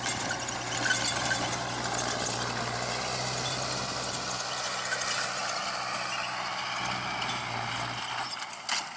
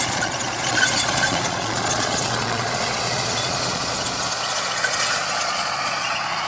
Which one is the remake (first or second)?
second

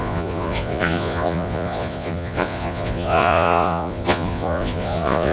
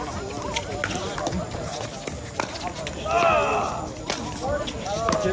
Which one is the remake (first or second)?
first